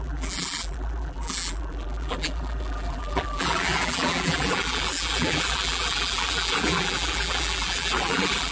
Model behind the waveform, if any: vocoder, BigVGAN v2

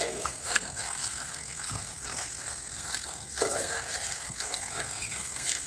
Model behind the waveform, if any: codec, SNAC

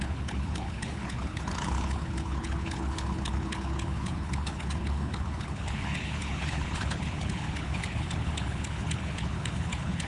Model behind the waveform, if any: codec, HILCodec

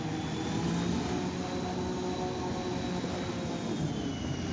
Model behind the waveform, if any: none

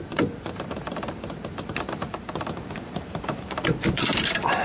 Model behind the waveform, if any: vocoder, BigVGAN v2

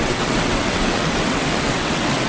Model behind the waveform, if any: vocoder, WaveNeXt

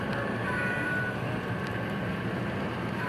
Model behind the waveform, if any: none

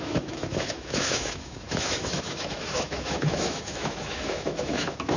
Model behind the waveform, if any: autoencoder, DAC-VAE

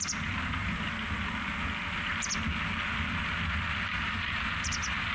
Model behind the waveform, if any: none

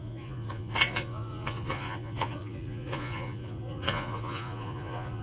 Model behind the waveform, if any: vocoder, Vocos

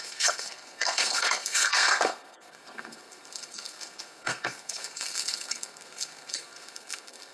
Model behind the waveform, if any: codec, SNAC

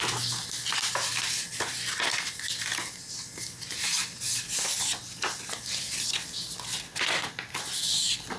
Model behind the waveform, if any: none